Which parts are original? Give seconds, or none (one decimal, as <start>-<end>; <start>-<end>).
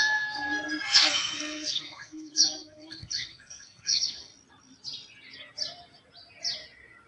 4.3-7.1